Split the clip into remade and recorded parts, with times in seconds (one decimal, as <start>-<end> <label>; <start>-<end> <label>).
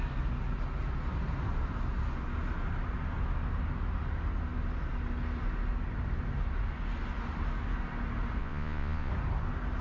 0.0-8.4 recorded; 8.4-9.1 remade; 9.1-9.8 recorded